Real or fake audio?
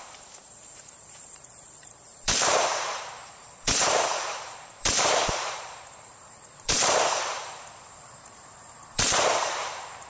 fake